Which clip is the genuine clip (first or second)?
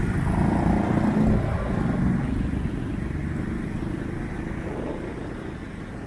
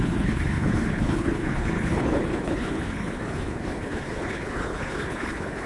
first